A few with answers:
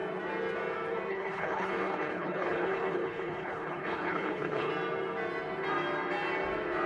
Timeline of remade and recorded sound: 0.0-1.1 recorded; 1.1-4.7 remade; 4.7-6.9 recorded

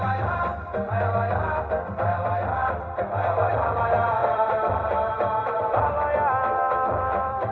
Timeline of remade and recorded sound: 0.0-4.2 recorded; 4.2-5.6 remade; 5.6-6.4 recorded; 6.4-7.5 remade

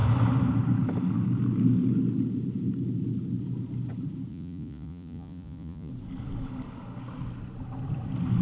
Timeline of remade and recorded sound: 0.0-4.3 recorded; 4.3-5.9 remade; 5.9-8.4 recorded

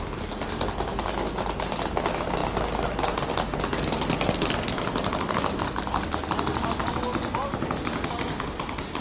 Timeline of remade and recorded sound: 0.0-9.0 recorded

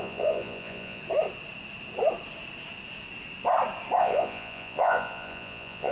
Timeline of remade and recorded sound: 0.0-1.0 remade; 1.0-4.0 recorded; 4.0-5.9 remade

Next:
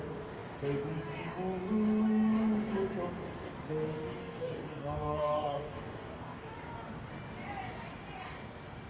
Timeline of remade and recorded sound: 0.0-4.2 recorded; 4.2-6.5 remade; 6.5-8.9 recorded

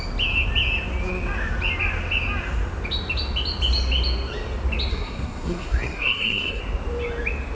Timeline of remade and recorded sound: 0.0-4.9 recorded; 4.9-6.6 remade; 6.6-7.5 recorded